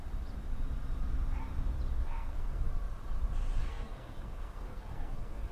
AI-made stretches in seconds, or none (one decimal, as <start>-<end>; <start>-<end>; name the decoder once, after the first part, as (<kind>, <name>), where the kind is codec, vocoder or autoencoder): 2.0-2.7 (codec, SNAC); 3.6-5.5